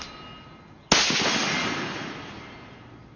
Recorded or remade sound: recorded